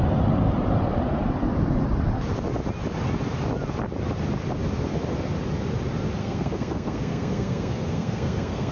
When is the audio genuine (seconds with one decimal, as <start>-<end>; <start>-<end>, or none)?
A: 0.0-6.2